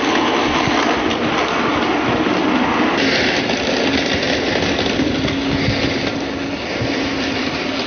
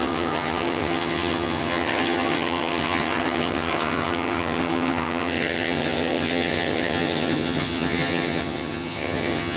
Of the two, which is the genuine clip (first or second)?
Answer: first